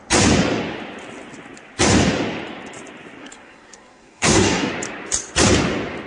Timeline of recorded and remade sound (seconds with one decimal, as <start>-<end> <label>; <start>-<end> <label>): 0.0-3.2 recorded; 3.2-4.7 remade; 4.7-6.1 recorded